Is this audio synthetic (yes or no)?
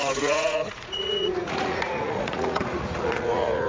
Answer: yes